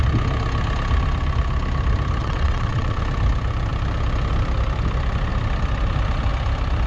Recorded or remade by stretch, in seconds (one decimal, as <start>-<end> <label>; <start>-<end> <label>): 0.0-2.2 recorded; 2.2-3.0 remade; 3.0-6.9 recorded